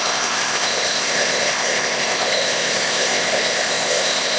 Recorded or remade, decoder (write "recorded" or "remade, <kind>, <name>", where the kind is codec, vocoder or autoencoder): remade, codec, ZipCodec